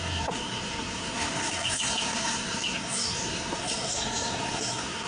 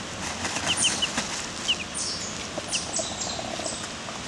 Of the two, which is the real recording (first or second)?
second